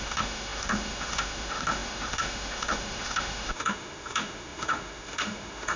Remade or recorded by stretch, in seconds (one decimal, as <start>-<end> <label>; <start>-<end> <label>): 0.0-5.8 remade